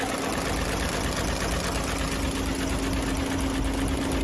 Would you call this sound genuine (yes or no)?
yes